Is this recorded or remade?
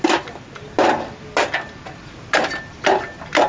recorded